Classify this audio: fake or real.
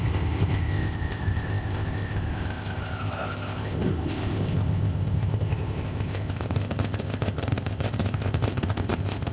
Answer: fake